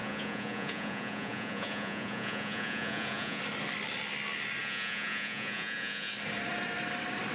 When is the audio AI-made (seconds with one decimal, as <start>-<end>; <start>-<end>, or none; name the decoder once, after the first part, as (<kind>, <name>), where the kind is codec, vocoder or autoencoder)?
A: 0.0-3.4 (vocoder, Vocos); 4.6-6.1